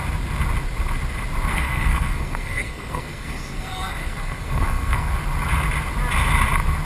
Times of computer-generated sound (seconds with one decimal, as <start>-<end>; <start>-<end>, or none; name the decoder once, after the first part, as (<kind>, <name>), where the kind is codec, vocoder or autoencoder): 1.5-5.1 (codec, SNAC)